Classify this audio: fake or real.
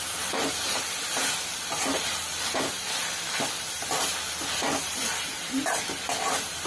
real